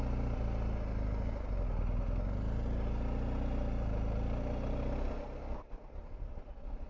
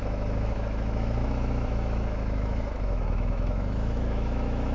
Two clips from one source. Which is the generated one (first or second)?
second